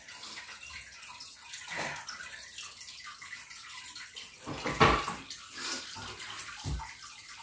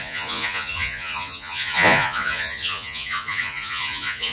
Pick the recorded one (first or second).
first